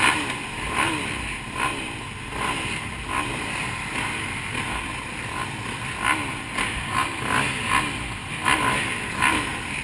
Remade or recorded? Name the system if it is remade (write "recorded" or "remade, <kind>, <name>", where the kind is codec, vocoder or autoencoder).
recorded